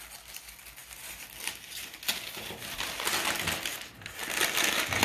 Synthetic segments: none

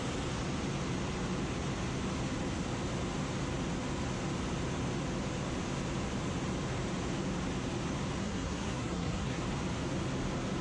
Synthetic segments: 8.2-9.4